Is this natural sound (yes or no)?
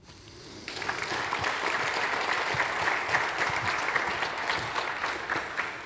yes